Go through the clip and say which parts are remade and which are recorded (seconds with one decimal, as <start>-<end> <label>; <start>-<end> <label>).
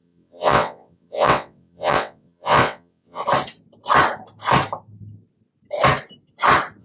0.0-3.2 remade; 3.2-6.8 recorded